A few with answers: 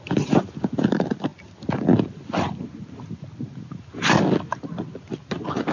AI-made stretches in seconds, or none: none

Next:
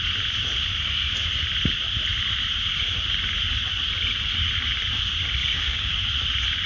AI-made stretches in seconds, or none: 5.4-6.0 (codec, DAC)

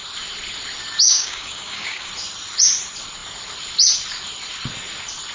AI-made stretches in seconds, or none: 1.0-2.1 (codec, DAC)

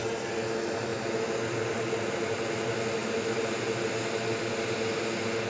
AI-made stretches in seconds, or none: none

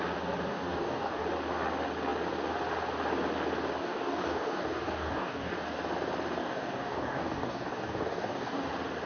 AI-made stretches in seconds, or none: 0.5-1.2 (codec, DAC); 3.8-5.6; 6.4-8.7